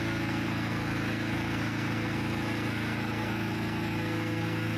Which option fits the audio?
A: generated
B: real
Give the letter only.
A